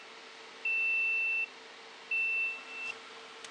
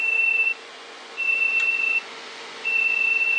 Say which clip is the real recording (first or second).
first